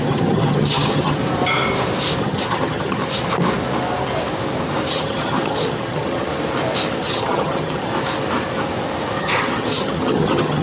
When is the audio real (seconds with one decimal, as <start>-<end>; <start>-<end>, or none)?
1.2-2.2; 3.0-4.9; 6.3-7.0; 7.9-9.2